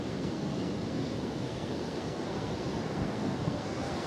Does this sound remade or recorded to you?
remade